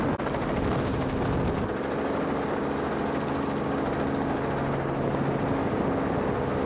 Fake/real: real